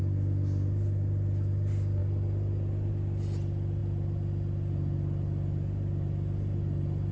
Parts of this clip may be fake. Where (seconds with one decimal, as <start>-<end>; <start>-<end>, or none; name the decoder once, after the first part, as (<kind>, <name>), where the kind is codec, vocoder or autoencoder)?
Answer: none